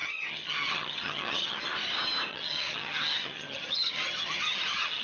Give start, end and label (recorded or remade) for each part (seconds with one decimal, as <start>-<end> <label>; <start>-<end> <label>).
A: 0.0-1.6 remade; 1.6-2.3 recorded; 2.3-5.0 remade